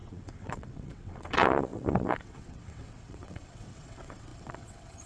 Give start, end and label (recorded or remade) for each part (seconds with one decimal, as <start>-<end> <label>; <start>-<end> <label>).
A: 0.0-5.1 remade